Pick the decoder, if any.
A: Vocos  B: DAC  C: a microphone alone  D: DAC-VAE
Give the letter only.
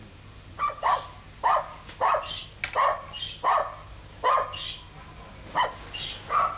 C